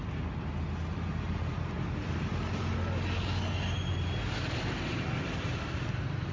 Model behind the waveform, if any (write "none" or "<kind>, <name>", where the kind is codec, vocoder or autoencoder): none